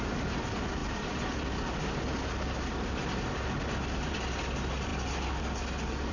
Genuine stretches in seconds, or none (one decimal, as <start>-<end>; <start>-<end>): 0.0-6.1